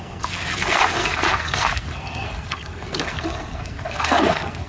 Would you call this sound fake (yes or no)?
yes